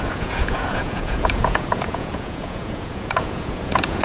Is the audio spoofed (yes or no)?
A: yes